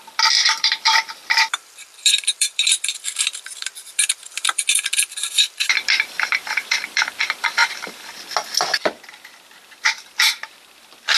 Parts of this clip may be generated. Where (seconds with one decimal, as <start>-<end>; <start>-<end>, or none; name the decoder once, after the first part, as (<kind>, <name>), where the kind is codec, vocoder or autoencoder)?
0.0-7.6 (vocoder, BigVGAN v2); 9.5-11.2